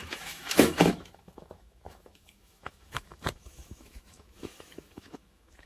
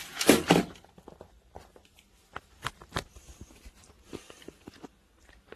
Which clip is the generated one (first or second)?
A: first